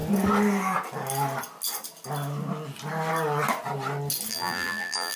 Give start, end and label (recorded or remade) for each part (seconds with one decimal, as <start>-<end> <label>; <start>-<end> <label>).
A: 0.0-4.3 recorded; 4.3-5.2 remade